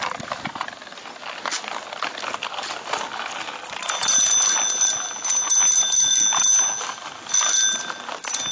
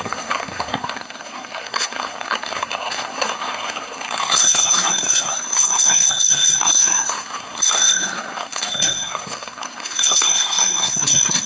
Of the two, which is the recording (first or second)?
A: first